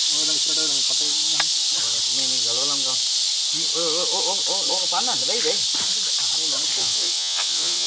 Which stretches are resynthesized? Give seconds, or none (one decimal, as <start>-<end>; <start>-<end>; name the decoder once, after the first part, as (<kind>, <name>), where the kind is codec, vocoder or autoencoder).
6.8-7.9 (vocoder, WaveNeXt)